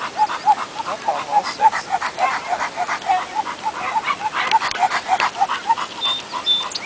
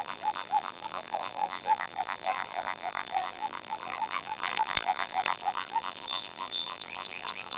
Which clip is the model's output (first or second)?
second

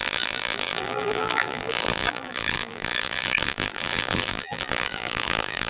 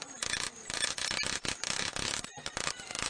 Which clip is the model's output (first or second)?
first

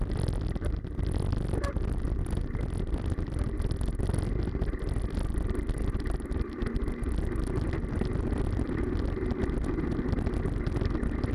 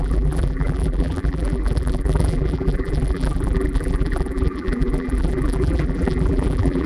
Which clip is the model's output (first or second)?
second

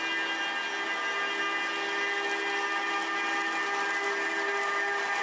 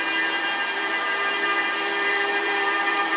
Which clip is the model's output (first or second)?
second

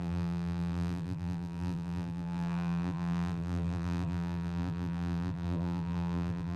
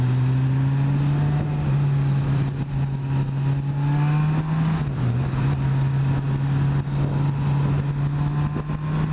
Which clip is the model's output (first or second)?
first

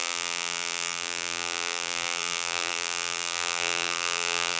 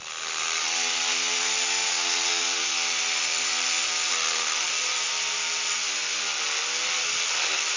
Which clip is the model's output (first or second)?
first